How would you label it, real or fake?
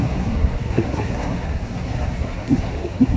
fake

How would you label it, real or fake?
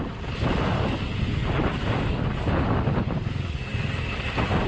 real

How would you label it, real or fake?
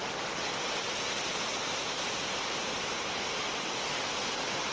real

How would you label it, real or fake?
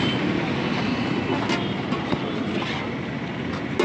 real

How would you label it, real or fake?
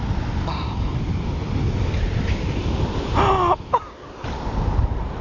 real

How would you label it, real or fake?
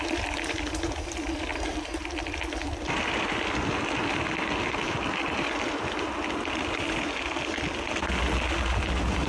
real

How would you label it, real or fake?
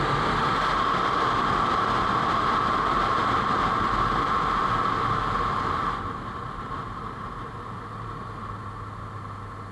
real